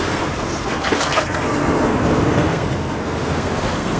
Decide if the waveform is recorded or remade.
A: remade